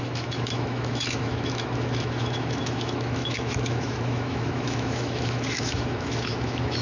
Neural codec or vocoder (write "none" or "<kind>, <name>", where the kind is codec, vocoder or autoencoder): autoencoder, DAC-VAE